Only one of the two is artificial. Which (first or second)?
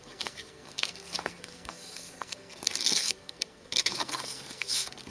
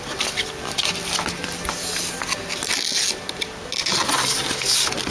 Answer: first